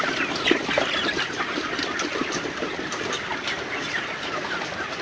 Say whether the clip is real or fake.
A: real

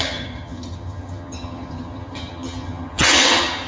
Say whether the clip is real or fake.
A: fake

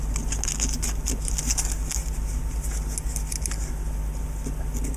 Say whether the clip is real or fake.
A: real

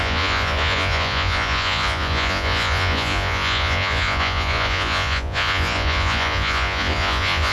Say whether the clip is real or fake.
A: fake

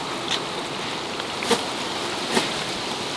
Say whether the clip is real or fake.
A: real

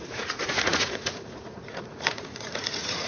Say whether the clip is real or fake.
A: fake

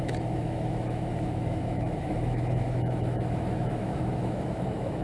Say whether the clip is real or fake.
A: fake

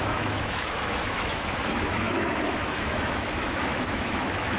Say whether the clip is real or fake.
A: fake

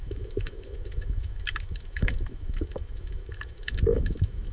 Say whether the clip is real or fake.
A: fake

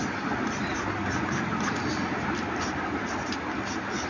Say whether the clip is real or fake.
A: real